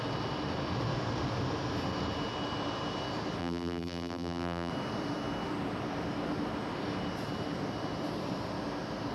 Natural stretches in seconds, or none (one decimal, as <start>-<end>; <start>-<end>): 0.0-3.4; 4.7-9.1